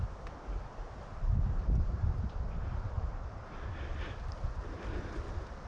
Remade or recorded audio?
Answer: recorded